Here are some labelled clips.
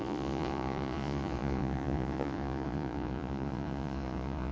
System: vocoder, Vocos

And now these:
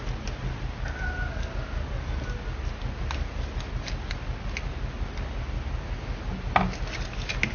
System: none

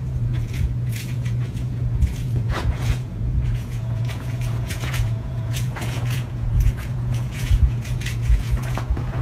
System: vocoder, Vocos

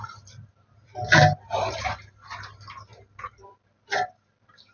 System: none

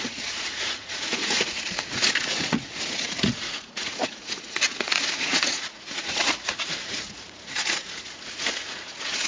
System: vocoder, Vocos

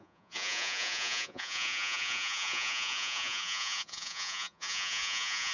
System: vocoder, Vocos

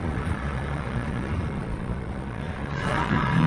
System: vocoder, Vocos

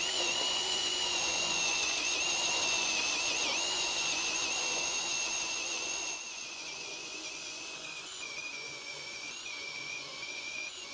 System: vocoder, Vocos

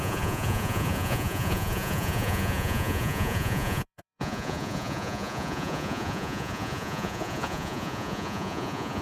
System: vocoder, Vocos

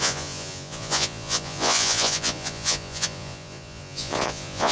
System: vocoder, Vocos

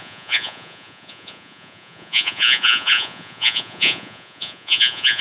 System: vocoder, Vocos